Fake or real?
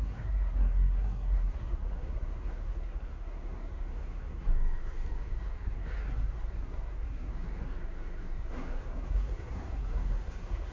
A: fake